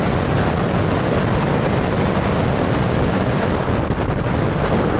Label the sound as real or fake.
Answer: real